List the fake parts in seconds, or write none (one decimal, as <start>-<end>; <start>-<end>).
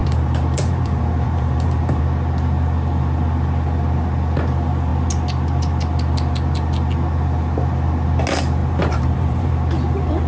0.0-2.0; 8.6-9.5